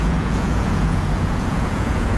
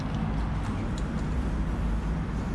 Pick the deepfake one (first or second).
first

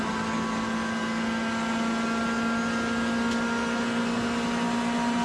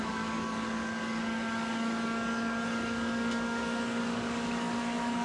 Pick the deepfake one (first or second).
second